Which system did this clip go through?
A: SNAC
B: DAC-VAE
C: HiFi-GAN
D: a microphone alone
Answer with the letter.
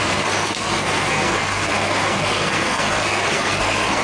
A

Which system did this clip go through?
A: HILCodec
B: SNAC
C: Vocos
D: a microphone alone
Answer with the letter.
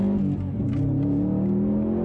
D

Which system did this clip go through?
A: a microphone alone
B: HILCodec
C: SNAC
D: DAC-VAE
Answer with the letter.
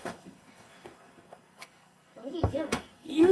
C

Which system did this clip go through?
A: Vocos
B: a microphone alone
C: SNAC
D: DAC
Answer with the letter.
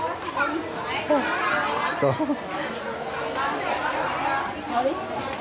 B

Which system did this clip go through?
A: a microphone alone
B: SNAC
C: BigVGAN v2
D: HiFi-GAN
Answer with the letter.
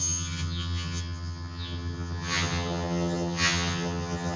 D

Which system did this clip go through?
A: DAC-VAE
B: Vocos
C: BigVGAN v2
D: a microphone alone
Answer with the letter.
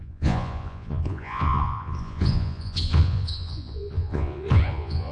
B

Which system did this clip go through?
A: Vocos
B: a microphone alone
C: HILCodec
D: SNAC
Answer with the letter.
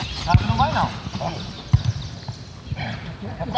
B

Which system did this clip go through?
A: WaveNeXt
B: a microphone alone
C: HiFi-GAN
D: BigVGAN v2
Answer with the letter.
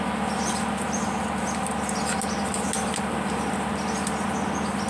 B